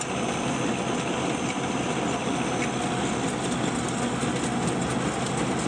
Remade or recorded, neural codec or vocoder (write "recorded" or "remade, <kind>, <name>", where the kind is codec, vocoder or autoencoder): recorded